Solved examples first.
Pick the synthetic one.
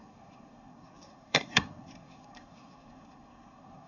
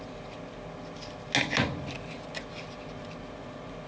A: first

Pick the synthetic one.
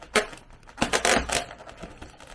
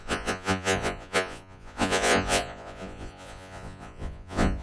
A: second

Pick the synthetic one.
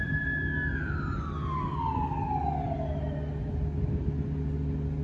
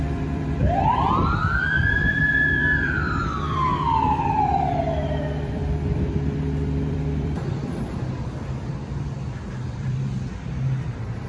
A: second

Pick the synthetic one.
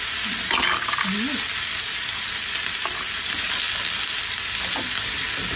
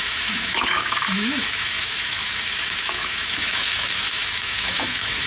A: second